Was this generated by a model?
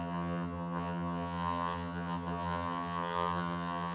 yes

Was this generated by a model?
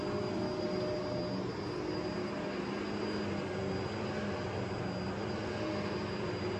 no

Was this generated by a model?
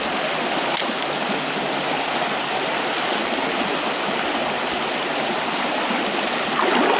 no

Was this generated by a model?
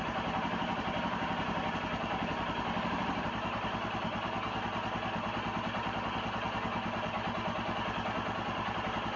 no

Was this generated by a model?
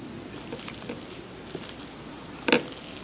no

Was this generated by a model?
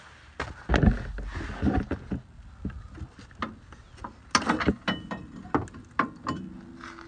no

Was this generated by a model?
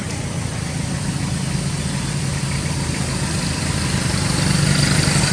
no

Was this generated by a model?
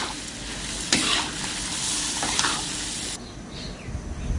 no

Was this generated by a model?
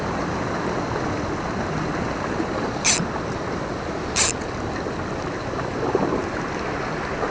no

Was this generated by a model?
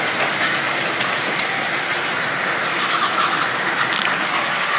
no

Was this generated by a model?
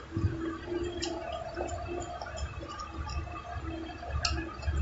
no